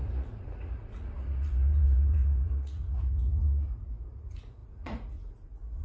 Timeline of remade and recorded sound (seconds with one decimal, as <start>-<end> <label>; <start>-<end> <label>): 0.0-5.8 remade